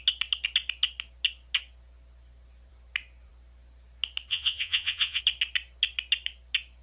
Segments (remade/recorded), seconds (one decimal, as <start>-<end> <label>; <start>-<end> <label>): 0.0-4.3 recorded; 4.3-5.2 remade; 5.2-6.8 recorded